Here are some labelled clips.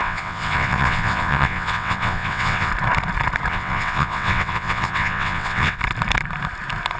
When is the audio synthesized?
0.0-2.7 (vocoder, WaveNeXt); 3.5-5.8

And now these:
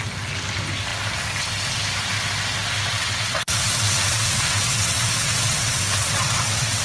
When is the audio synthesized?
2.9-6.8 (vocoder, WaveNeXt)